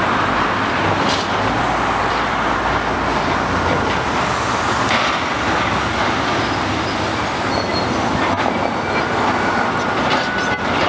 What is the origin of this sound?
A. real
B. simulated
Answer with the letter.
A